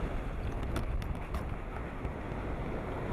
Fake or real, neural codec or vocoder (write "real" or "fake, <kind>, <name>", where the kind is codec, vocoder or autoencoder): real